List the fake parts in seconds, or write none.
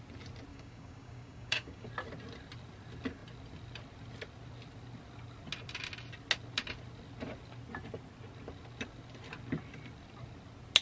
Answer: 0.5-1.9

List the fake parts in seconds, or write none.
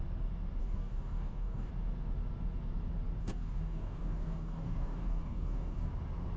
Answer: 0.6-1.7; 3.2-5.9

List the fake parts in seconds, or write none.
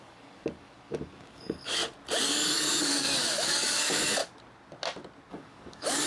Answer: 0.0-1.8; 2.3-4.2; 5.3-6.1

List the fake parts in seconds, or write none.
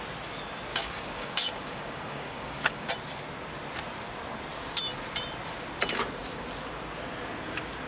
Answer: 0.7-2.9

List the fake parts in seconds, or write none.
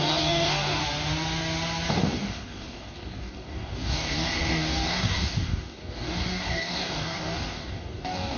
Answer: 0.0-0.8; 1.9-8.4